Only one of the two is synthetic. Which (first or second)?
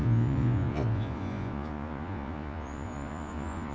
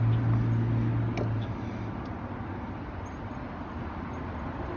first